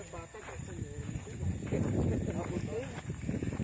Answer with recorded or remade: recorded